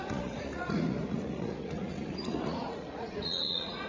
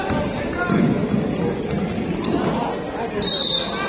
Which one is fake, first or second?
first